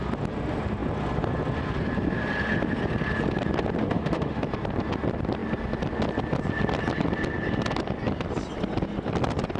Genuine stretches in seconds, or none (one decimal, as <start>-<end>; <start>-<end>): 0.0-3.8; 4.4-9.6